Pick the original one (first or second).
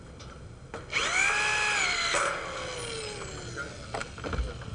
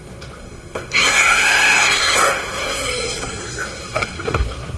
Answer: first